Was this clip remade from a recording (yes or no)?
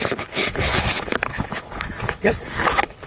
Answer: yes